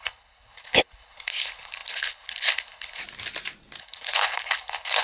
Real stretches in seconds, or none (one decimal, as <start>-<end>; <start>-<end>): 3.0-3.8